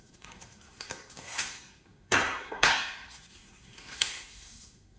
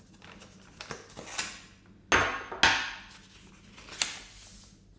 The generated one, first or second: first